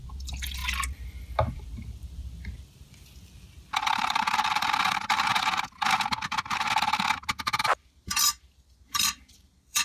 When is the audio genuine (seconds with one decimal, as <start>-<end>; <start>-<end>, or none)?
0.6-1.5; 5.3-7.6